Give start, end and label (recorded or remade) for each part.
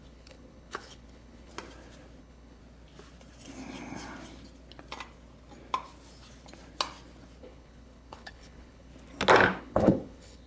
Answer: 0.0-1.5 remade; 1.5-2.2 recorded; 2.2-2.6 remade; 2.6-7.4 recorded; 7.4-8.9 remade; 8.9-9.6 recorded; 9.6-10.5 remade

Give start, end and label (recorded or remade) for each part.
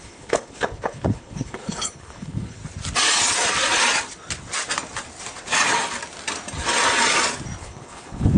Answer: 0.0-2.6 remade; 2.6-7.6 recorded; 7.6-8.4 remade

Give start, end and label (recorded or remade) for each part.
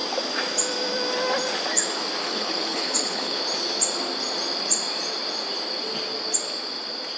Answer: 0.0-2.2 recorded; 2.2-3.4 remade; 3.4-7.2 recorded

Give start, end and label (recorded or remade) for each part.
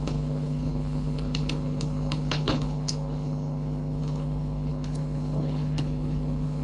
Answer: 0.0-6.6 remade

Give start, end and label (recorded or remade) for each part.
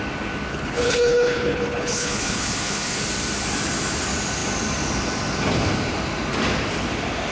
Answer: 0.0-0.5 recorded; 0.5-3.0 remade; 3.0-7.3 recorded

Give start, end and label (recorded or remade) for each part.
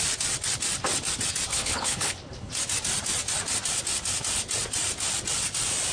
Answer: 0.0-1.5 recorded; 1.5-2.5 remade; 2.5-5.9 recorded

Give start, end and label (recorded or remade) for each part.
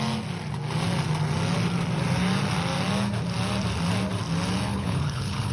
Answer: 0.0-4.7 recorded; 4.7-5.5 remade